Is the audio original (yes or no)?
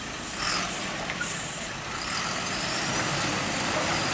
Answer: no